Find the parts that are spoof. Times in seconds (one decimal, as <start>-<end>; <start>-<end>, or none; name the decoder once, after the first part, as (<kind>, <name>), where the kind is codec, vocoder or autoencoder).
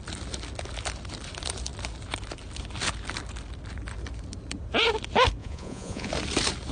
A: 5.4-6.1 (vocoder, Vocos)